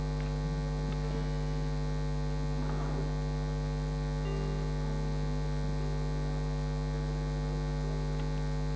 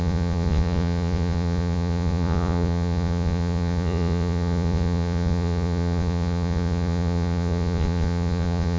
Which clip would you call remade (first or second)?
second